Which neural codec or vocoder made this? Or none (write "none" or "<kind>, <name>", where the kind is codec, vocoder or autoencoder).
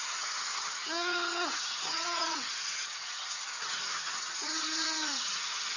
vocoder, HiFi-GAN